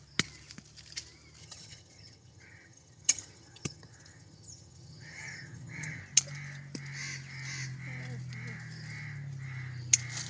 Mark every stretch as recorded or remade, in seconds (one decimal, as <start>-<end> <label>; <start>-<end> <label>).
0.0-1.4 recorded; 1.4-6.0 remade; 6.0-10.3 recorded